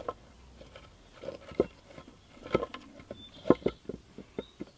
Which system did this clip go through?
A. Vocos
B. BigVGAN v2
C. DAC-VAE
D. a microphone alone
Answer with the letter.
D